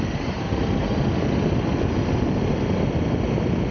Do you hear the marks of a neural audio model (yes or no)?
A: no